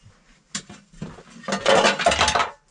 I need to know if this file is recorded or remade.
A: recorded